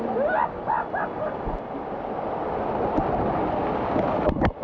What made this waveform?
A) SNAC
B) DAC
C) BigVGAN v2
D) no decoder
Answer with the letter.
D